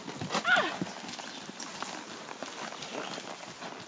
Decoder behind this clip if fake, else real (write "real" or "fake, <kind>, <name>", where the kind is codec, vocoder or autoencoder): real